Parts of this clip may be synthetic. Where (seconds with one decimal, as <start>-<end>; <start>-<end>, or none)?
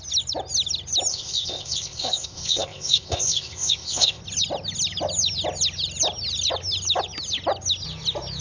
1.1-4.2